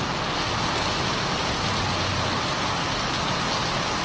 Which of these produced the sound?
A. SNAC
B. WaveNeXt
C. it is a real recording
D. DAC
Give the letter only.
C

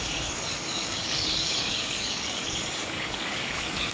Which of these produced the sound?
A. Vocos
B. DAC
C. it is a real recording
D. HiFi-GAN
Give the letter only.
B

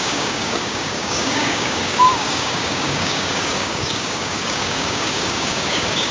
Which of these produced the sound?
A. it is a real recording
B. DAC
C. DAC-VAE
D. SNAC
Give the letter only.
B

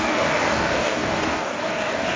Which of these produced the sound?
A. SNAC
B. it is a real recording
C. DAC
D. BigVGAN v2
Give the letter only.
C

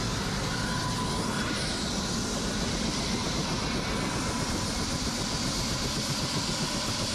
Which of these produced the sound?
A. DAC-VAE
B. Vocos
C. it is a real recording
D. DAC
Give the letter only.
C